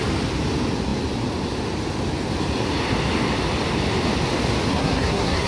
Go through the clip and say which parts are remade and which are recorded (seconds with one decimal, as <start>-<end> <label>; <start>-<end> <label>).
0.0-4.7 recorded; 4.7-5.5 remade